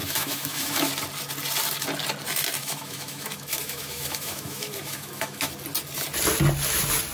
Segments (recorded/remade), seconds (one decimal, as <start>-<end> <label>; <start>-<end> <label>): 0.0-0.9 remade; 0.9-2.6 recorded; 2.6-5.5 remade; 5.5-7.1 recorded